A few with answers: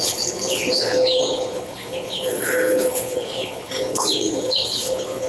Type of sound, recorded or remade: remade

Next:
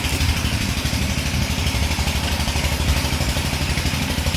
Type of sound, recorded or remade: remade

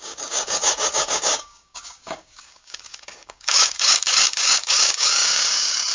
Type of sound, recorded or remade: remade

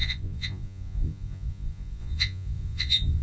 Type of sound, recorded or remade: remade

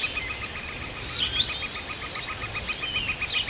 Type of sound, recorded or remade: recorded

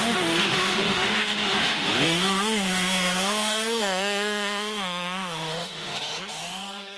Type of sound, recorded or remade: remade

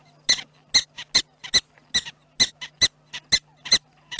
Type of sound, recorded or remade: recorded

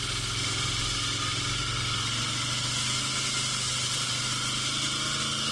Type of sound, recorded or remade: recorded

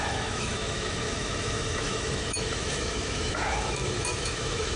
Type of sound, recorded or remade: remade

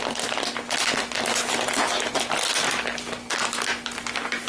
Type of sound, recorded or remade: recorded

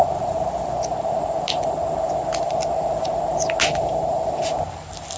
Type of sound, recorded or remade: recorded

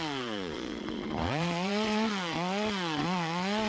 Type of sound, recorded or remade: remade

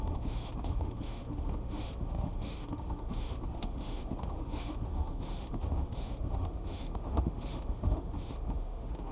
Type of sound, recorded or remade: remade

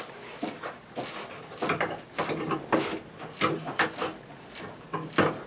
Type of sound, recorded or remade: recorded